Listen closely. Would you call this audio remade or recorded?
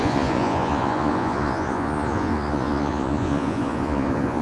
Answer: remade